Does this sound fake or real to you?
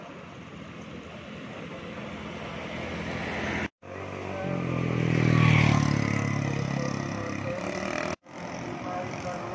real